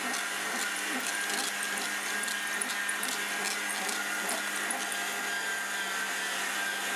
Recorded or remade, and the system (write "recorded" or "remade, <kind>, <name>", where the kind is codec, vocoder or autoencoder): recorded